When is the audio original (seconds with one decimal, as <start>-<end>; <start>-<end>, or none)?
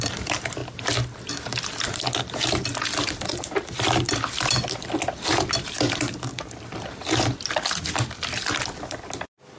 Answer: 0.0-9.6